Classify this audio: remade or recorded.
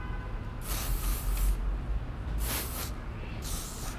recorded